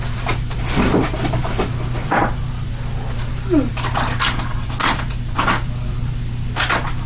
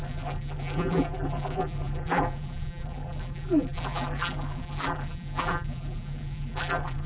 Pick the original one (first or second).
first